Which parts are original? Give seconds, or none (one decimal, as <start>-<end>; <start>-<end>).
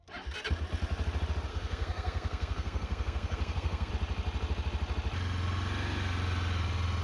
0.0-1.5; 3.9-7.0